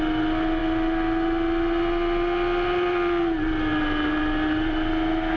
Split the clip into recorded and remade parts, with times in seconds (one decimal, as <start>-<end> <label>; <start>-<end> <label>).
0.0-5.4 recorded